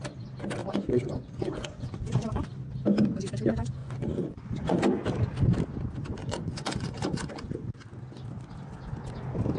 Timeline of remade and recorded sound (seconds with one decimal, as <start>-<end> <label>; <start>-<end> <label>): 0.0-0.6 recorded; 0.6-2.5 remade; 2.5-3.8 recorded; 3.8-4.8 remade; 4.8-6.2 recorded; 6.2-7.7 remade; 7.7-9.6 recorded